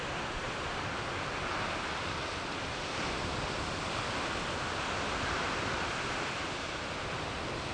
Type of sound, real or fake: fake